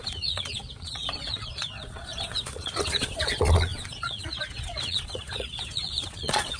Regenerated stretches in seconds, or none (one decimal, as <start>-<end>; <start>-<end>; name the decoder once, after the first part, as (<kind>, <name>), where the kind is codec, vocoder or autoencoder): 0.0-6.6 (vocoder, Vocos)